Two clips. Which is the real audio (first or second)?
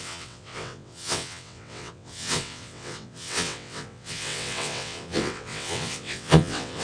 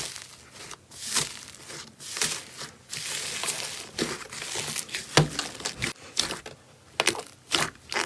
second